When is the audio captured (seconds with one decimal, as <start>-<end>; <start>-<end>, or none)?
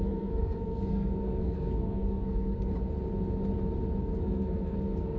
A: 2.7-4.0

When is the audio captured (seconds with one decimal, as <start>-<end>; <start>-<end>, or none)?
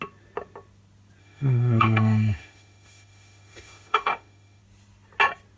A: 0.0-1.2; 4.6-5.6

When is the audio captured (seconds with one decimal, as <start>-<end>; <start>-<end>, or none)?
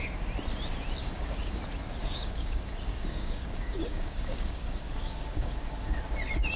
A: 0.0-1.0; 1.6-2.0; 6.0-6.6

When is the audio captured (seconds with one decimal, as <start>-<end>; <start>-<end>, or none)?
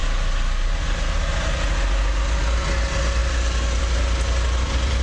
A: 0.0-3.2; 3.8-5.0